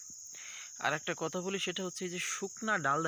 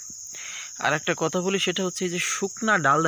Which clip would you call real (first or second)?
first